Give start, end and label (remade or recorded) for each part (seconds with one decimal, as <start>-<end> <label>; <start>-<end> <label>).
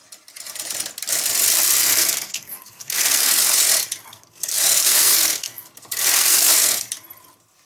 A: 0.0-1.8 recorded; 1.8-3.4 remade; 3.4-4.0 recorded; 4.0-6.9 remade; 6.9-7.6 recorded